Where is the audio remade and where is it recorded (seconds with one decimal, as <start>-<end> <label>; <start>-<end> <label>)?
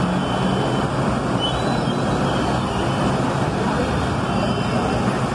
0.0-3.0 recorded; 3.0-3.8 remade; 3.8-5.3 recorded